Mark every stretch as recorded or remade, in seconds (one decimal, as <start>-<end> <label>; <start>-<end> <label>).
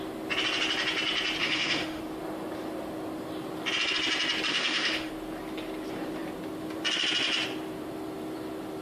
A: 0.0-1.4 recorded; 1.4-2.0 remade; 2.0-4.5 recorded; 4.5-5.1 remade; 5.1-8.8 recorded